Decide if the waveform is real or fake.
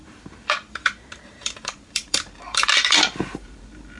fake